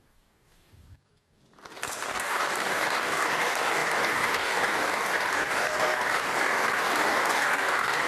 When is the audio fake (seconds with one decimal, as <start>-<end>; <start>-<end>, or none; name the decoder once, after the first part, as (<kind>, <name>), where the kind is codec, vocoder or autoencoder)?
0.0-1.4 (codec, DAC); 2.1-8.1